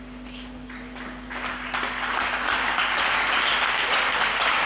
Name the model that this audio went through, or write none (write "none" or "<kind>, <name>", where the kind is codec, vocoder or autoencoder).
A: none